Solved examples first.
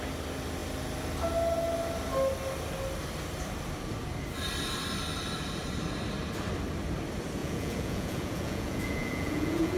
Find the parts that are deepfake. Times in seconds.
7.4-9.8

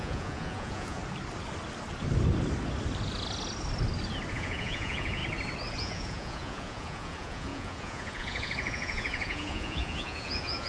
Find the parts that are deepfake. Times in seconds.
0.0-1.0; 4.3-5.2; 5.8-10.7

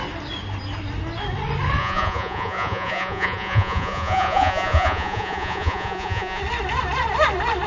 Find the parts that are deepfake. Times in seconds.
1.8-6.4

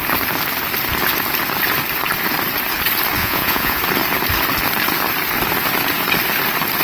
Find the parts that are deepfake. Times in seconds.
3.2-3.8

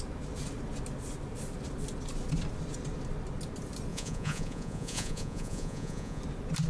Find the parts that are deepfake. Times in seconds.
3.9-6.2